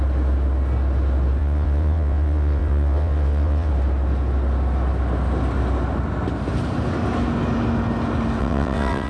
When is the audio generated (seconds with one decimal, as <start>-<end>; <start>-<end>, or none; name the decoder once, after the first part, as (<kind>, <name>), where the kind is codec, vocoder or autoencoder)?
1.4-3.7 (vocoder, WaveNeXt); 8.4-9.1

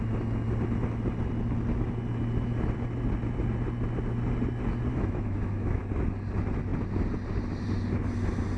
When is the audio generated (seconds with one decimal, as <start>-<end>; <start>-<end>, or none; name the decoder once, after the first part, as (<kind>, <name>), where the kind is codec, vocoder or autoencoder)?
4.9-5.8 (autoencoder, DAC-VAE)

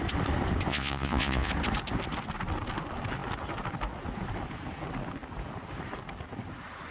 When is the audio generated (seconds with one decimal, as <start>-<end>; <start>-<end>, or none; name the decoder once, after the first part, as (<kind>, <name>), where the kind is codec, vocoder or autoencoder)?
0.7-1.5 (vocoder, Vocos)

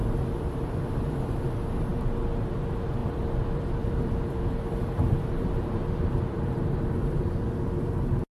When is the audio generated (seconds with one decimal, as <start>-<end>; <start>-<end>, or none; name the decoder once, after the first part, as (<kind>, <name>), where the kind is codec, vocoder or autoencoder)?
0.0-1.1 (vocoder, BigVGAN v2); 3.0-7.2